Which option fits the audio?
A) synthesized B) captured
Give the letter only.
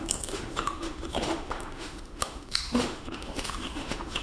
A